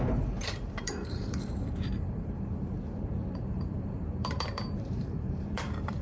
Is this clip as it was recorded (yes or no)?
no